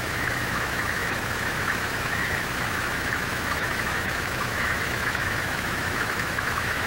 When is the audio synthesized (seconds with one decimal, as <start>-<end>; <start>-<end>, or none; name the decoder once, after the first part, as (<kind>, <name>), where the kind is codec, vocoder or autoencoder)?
0.0-6.9 (autoencoder, DAC-VAE)